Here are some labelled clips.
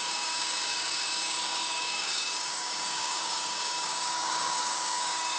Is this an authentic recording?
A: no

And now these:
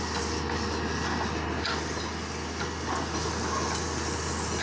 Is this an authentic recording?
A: yes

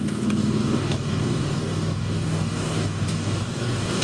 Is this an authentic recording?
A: no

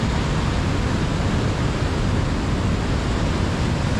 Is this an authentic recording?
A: yes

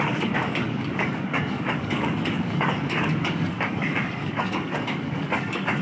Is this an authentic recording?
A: no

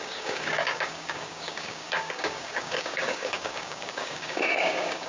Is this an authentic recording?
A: no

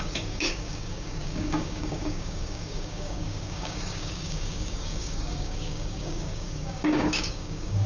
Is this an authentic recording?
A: no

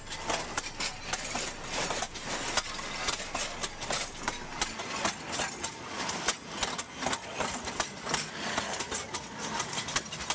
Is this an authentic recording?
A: yes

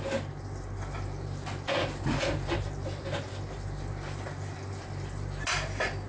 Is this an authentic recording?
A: yes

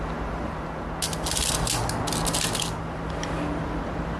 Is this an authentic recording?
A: yes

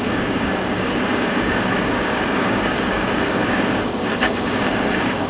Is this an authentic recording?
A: no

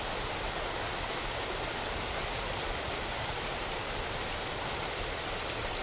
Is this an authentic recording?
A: yes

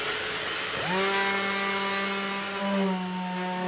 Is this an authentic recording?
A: yes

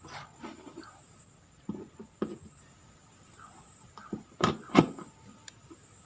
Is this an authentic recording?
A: yes